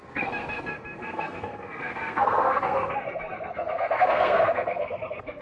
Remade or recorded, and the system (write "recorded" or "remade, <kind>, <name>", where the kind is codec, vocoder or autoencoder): remade, codec, SNAC